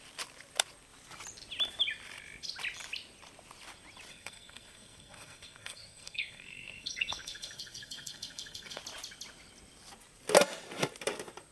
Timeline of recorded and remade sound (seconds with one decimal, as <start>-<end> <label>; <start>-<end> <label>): 0.0-4.1 recorded; 4.1-8.8 remade; 8.8-11.5 recorded